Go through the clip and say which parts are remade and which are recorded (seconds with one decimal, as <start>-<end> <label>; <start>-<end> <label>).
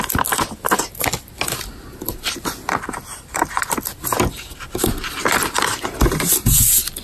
0.0-3.1 recorded; 3.1-3.6 remade; 3.6-7.0 recorded